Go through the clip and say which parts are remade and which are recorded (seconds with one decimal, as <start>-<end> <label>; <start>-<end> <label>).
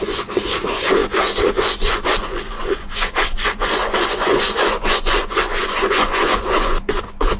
0.0-7.4 remade